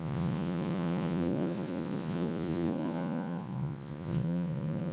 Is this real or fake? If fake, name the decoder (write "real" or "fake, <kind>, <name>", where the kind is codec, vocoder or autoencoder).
fake, vocoder, Vocos